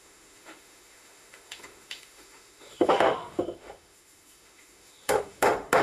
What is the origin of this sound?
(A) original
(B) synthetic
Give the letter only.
B